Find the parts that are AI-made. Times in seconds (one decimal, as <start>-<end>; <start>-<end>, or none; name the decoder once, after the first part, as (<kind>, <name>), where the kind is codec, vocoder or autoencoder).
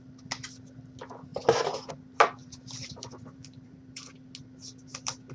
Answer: 2.4-4.1 (vocoder, BigVGAN v2)